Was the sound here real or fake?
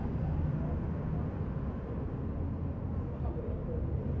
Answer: real